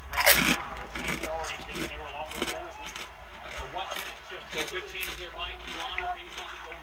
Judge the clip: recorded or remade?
recorded